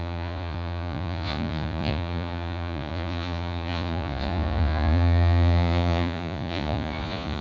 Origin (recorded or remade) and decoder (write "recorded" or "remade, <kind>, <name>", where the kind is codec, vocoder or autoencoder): remade, vocoder, Vocos